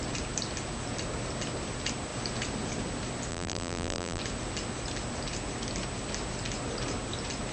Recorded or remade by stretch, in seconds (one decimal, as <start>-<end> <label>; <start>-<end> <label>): 0.0-3.3 recorded; 3.3-4.2 remade; 4.2-7.5 recorded